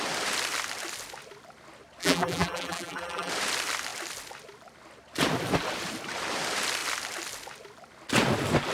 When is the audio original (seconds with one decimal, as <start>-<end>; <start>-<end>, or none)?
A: 0.0-2.0; 3.3-8.7